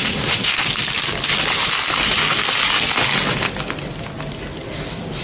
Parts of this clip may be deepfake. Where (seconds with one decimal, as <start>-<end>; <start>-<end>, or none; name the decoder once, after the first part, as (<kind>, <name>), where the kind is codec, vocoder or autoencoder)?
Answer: 0.0-0.6 (autoencoder, DAC-VAE)